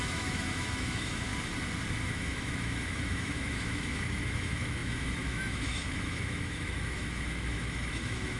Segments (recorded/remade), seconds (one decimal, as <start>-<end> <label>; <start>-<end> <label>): 0.0-1.3 remade; 1.3-2.0 recorded; 2.0-8.4 remade